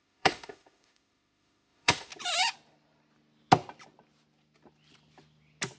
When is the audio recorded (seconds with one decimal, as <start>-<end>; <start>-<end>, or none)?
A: 2.1-5.8